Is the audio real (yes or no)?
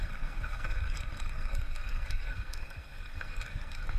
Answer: no